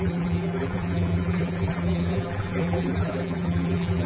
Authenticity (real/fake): fake